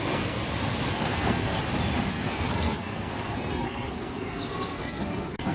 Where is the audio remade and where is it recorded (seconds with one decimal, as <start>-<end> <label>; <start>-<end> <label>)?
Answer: 0.0-0.4 remade; 0.4-0.9 recorded; 0.9-1.6 remade; 1.6-2.1 recorded; 2.1-5.5 remade